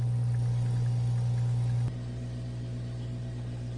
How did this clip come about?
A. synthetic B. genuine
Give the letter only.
B